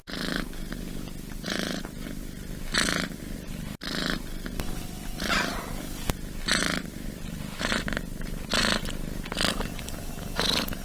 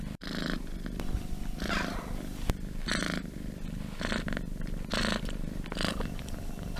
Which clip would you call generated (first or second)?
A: second